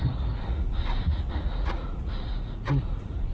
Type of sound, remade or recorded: remade